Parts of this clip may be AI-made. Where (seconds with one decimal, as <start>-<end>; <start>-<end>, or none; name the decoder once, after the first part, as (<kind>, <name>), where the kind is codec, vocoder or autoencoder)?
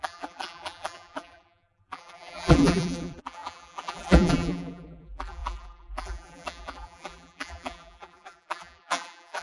0.0-9.4 (vocoder, BigVGAN v2)